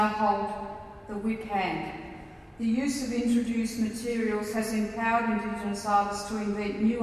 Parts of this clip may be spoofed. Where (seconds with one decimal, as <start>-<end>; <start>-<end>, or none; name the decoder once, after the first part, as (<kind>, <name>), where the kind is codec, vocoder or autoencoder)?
4.1-4.6 (autoencoder, DAC-VAE)